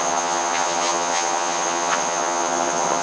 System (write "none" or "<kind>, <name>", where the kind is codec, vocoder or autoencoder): vocoder, HiFi-GAN